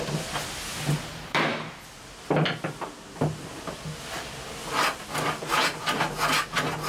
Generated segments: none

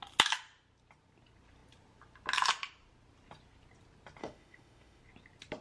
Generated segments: 4.2-5.0 (autoencoder, DAC-VAE)

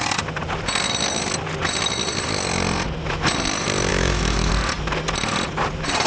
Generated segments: 3.9-4.5 (autoencoder, DAC-VAE)

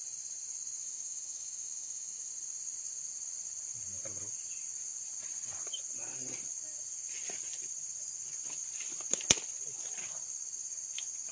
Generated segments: 0.8-2.3 (autoencoder, DAC-VAE)

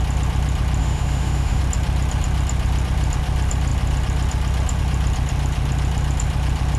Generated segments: 0.8-1.6 (autoencoder, DAC-VAE)

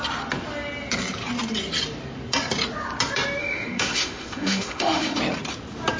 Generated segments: 3.4-5.2 (autoencoder, DAC-VAE)

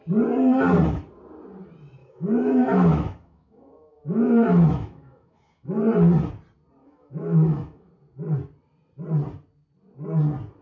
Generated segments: 2.0-5.8 (autoencoder, DAC-VAE); 6.8-7.9